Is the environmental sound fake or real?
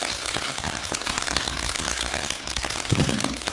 fake